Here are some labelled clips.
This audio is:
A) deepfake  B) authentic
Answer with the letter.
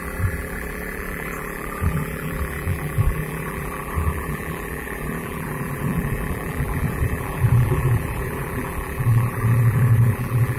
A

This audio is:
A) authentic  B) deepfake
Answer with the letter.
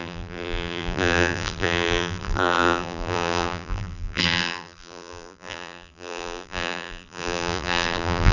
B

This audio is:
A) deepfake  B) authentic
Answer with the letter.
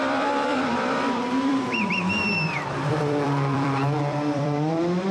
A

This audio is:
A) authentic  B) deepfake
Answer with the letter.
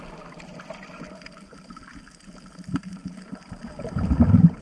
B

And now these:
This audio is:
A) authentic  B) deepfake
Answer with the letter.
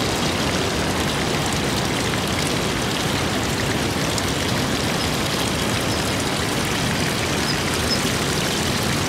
A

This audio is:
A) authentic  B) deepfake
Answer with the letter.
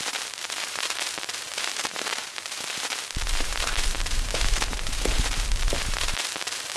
B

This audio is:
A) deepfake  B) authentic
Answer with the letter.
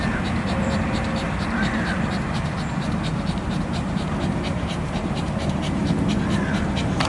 A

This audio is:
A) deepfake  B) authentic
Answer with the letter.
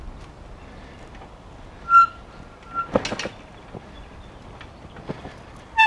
B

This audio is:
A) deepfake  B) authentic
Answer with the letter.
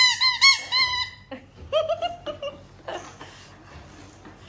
B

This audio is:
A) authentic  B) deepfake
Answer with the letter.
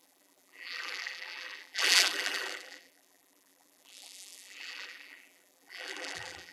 B